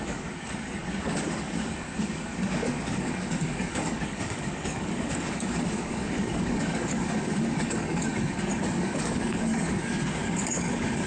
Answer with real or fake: fake